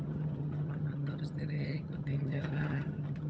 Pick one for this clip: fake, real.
fake